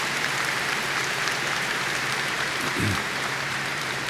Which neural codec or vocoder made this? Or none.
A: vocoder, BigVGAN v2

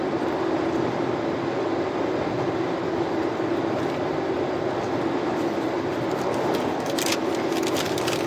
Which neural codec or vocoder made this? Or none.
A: vocoder, BigVGAN v2